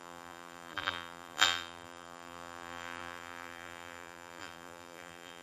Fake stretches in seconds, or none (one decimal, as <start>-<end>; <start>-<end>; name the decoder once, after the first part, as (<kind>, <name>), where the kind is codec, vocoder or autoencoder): 0.0-5.4 (vocoder, BigVGAN v2)